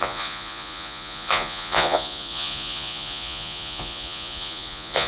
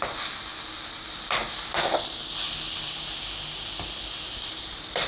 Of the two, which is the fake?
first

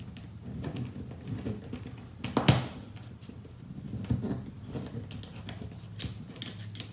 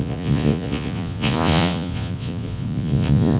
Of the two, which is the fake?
second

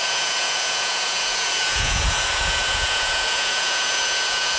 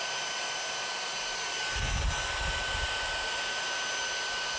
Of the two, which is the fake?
first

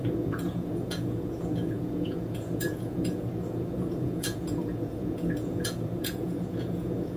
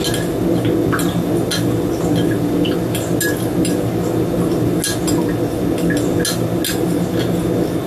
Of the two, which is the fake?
first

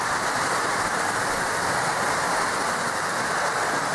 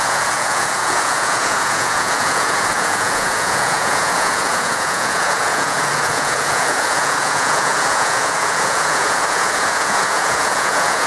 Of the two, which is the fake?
second